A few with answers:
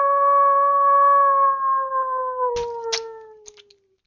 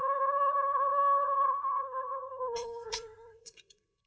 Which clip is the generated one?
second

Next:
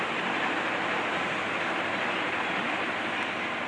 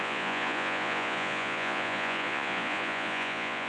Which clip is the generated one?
second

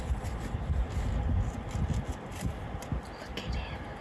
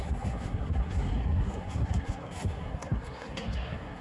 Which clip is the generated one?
second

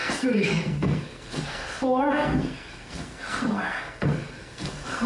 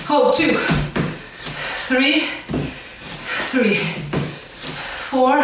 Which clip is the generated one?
first